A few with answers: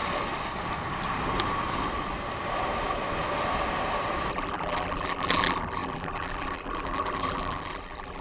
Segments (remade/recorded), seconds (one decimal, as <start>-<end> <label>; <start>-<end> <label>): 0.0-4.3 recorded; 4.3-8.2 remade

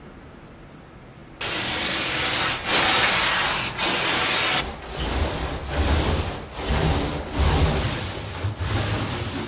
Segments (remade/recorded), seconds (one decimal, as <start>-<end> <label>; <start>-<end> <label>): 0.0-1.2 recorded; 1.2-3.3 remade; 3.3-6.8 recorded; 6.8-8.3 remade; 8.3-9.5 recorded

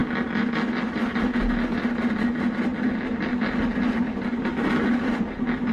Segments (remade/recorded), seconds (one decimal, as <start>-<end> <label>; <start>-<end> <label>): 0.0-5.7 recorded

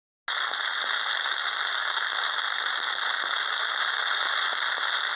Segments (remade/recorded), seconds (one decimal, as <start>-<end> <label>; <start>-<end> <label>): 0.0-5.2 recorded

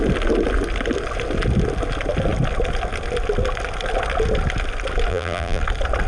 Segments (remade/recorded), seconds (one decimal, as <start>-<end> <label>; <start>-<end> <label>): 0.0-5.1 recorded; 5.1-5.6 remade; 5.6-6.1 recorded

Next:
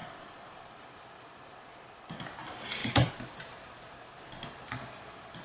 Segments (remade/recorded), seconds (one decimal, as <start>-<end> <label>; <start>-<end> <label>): 0.0-0.8 remade; 0.8-2.8 recorded; 2.8-4.5 remade; 4.5-5.4 recorded

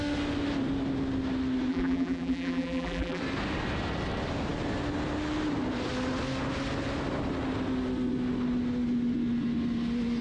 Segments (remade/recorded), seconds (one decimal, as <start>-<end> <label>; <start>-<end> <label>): 0.0-1.7 recorded; 1.7-3.2 remade; 3.2-10.2 recorded